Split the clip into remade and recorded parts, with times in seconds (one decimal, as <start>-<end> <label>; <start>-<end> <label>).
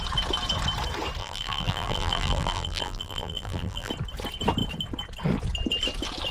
0.0-1.2 recorded; 1.2-3.9 remade; 3.9-6.3 recorded